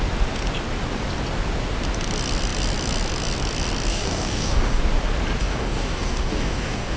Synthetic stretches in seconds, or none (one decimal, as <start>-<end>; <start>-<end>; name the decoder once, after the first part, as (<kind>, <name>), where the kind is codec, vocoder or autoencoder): 3.9-4.8 (codec, DAC); 5.4-7.0

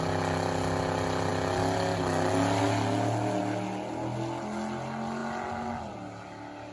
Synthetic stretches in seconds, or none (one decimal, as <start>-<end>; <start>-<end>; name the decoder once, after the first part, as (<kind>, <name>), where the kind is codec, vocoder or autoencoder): none

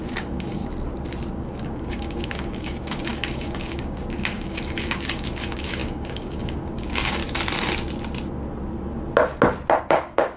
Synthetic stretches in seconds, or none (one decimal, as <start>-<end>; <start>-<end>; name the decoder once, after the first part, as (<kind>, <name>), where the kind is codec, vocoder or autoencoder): 0.0-0.6 (codec, DAC); 1.3-7.2; 9.8-10.4

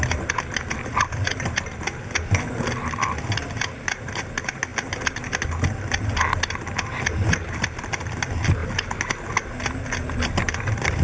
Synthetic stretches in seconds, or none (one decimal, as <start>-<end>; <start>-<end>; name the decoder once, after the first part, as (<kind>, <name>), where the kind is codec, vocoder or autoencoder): none

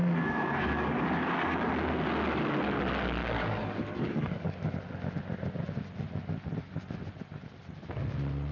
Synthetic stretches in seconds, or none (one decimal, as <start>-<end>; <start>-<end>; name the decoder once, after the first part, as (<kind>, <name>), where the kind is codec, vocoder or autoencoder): 0.0-1.7 (codec, DAC); 3.2-4.6

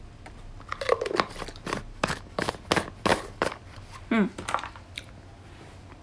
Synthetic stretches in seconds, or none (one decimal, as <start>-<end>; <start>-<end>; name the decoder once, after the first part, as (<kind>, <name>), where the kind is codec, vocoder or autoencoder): 1.9-2.5 (codec, DAC); 3.1-3.6

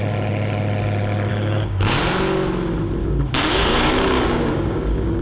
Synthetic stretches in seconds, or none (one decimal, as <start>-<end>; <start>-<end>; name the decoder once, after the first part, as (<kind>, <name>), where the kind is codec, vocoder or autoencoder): 1.3-2.0 (codec, DAC); 3.0-5.2